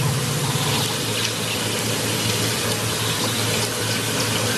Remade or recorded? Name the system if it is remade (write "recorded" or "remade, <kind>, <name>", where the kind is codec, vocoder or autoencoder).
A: recorded